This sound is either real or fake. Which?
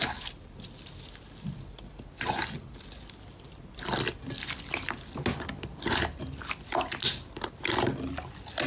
real